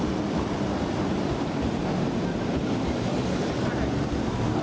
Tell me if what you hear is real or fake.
real